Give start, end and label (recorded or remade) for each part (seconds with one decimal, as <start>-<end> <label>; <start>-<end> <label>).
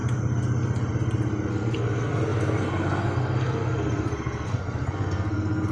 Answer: 0.0-1.5 recorded; 1.5-5.7 remade